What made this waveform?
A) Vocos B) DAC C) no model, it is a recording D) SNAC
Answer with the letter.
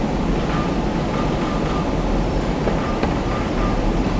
C